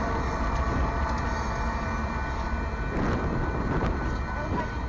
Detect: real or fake real